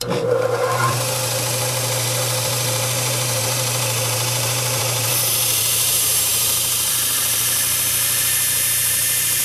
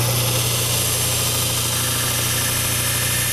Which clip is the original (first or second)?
second